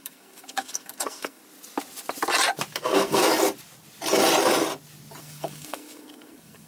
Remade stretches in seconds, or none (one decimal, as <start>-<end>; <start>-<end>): 0.0-1.4; 2.7-3.3; 5.2-6.7